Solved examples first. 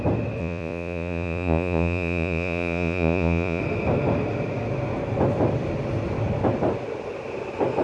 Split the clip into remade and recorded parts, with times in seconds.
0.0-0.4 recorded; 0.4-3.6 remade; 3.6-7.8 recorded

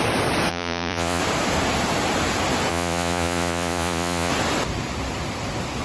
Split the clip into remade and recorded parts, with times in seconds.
0.0-0.5 recorded; 0.5-1.2 remade; 1.2-2.7 recorded; 2.7-4.3 remade; 4.3-5.8 recorded

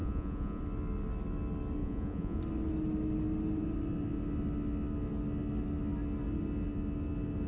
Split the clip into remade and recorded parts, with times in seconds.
0.0-0.6 remade; 0.6-1.8 recorded; 1.8-2.4 remade; 2.4-7.5 recorded

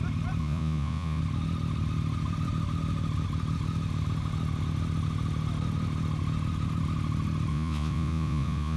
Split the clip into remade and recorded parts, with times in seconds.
0.0-0.4 recorded; 0.4-1.2 remade; 1.2-7.5 recorded; 7.5-8.8 remade

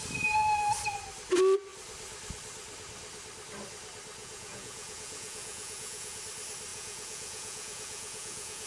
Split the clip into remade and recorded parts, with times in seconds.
0.0-4.2 recorded; 4.2-6.2 remade; 6.2-6.7 recorded; 6.7-8.7 remade

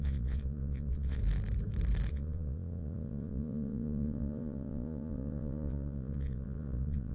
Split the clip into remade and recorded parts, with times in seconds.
0.0-1.2 remade; 1.2-2.1 recorded; 2.1-7.1 remade

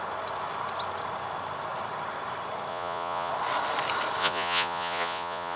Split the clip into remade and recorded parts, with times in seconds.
0.0-2.7 recorded; 2.7-3.3 remade; 3.3-4.2 recorded; 4.2-5.6 remade